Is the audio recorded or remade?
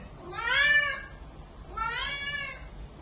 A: recorded